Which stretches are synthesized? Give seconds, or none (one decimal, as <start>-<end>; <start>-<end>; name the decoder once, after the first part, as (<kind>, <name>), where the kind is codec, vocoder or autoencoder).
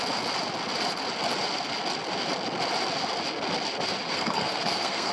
4.1-5.1 (codec, SNAC)